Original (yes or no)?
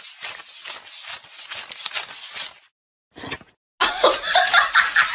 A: yes